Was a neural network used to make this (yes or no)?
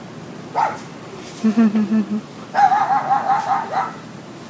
yes